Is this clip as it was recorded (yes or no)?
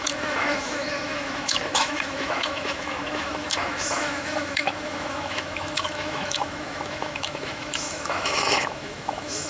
no